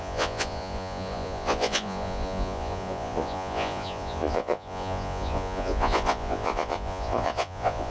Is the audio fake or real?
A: fake